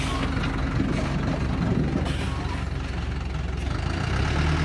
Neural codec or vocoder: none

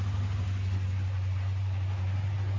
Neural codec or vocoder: none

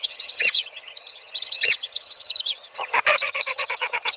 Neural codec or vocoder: vocoder, HiFi-GAN